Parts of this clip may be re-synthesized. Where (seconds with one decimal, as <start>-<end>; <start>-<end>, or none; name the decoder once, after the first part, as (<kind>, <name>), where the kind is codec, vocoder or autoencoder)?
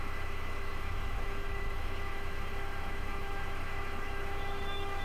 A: 0.0-5.0 (autoencoder, DAC-VAE)